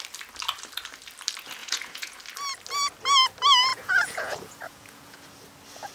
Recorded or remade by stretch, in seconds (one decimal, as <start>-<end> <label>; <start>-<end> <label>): 0.0-1.6 recorded; 1.6-2.2 remade; 2.2-3.7 recorded; 3.7-5.3 remade; 5.3-5.9 recorded